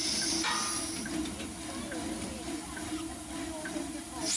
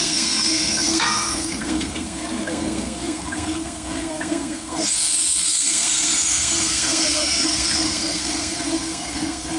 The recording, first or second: first